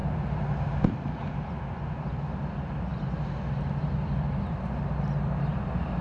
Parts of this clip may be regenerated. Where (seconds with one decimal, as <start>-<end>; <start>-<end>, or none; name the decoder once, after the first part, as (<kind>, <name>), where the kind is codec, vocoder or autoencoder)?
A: none